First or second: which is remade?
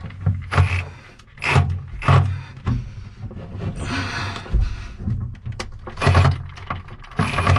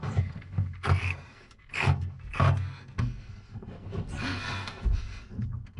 second